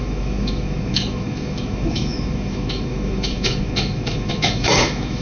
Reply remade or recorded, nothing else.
remade